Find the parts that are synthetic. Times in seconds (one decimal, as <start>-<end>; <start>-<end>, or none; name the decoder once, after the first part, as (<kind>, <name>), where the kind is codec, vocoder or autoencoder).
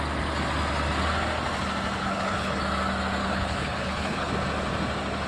2.0-2.6 (codec, HILCodec); 3.2-4.3